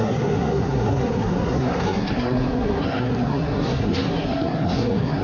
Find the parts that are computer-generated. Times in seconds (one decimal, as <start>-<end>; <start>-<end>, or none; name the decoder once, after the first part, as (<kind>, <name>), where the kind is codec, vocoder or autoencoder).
0.0-5.2 (codec, SNAC)